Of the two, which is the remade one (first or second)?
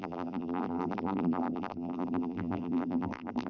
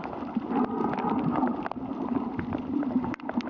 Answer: first